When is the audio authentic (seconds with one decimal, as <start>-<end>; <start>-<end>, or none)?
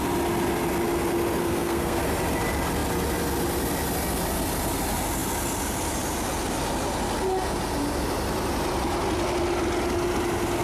0.0-1.4; 2.0-10.6